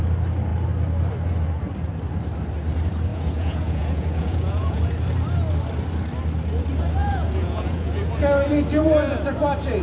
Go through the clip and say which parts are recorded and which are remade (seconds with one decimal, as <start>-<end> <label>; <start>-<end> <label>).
0.0-3.1 recorded; 3.1-4.8 remade; 4.8-7.0 recorded; 7.0-8.1 remade; 8.1-9.8 recorded